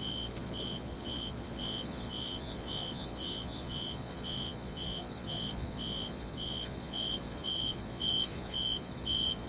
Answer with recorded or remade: remade